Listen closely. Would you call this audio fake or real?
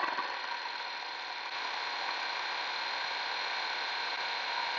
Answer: real